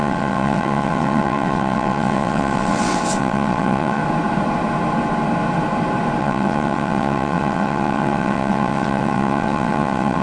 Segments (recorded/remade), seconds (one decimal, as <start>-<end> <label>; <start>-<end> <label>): 0.0-4.0 remade; 4.0-6.2 recorded; 6.2-10.2 remade